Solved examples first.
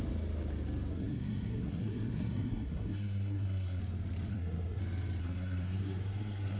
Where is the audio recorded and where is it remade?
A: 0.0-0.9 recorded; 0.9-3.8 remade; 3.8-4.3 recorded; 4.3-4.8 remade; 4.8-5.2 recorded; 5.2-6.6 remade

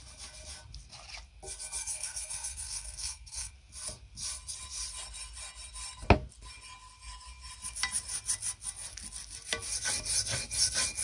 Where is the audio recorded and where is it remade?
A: 0.0-1.8 recorded; 1.8-3.5 remade; 3.5-11.0 recorded

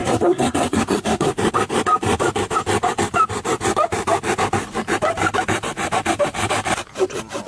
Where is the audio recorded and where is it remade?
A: 0.0-1.3 remade; 1.3-7.5 recorded

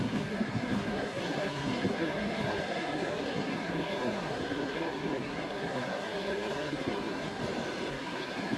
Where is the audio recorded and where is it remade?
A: 0.0-7.4 remade; 7.4-7.9 recorded; 7.9-8.6 remade

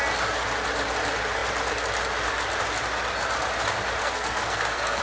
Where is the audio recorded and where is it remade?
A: 0.0-4.0 recorded; 4.0-5.0 remade